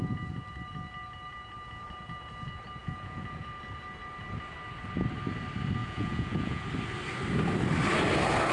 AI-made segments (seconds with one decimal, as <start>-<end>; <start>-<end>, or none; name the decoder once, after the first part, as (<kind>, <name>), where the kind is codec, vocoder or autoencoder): 2.8-3.5 (vocoder, Vocos); 5.8-6.7